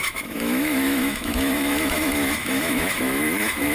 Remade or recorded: remade